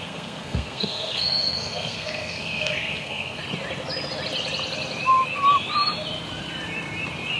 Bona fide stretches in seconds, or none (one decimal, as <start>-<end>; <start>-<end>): 3.4-7.4